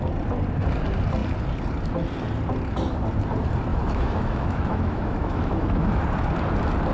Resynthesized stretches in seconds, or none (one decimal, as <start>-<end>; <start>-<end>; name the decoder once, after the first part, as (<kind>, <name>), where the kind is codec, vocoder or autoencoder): 3.7-6.0 (autoencoder, DAC-VAE)